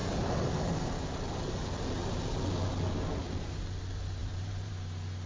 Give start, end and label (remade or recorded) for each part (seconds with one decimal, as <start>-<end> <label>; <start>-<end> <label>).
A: 0.0-4.2 recorded; 4.2-4.7 remade; 4.7-5.3 recorded